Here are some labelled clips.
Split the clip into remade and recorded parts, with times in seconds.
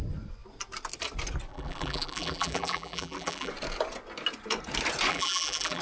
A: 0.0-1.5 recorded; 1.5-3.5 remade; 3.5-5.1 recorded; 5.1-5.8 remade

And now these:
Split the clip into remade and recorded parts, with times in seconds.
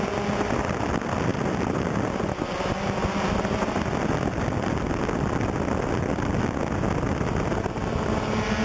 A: 0.0-1.3 recorded; 1.3-1.9 remade; 1.9-8.6 recorded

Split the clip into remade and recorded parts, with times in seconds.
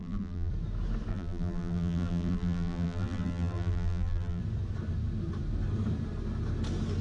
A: 0.0-0.5 remade; 0.5-1.1 recorded; 1.1-4.4 remade; 4.4-7.0 recorded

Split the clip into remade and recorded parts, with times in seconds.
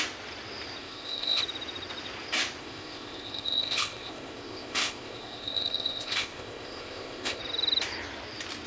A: 0.0-0.8 recorded; 0.8-1.4 remade; 1.4-2.6 recorded; 2.6-7.4 remade; 7.4-8.7 recorded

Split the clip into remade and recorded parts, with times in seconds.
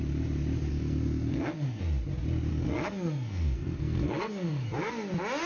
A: 0.0-0.7 recorded; 0.7-1.8 remade; 1.8-2.5 recorded; 2.5-4.9 remade; 4.9-5.5 recorded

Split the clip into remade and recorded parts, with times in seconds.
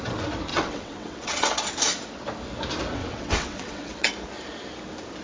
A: 0.0-0.5 recorded; 0.5-1.6 remade; 1.6-3.0 recorded; 3.0-4.1 remade; 4.1-5.2 recorded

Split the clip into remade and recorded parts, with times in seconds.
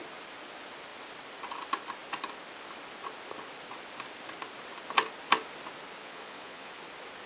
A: 0.0-6.0 recorded; 6.0-6.7 remade; 6.7-7.3 recorded